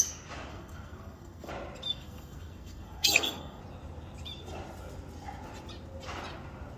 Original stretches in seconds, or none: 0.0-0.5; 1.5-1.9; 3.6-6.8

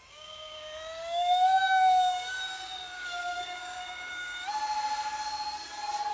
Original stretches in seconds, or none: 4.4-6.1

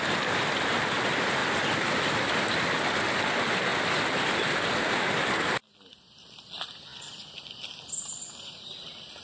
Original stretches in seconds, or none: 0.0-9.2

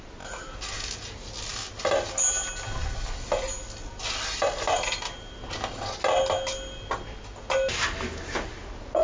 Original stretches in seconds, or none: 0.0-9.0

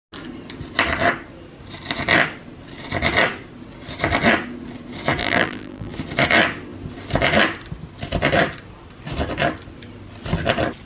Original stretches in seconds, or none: 0.0-5.2; 5.9-10.9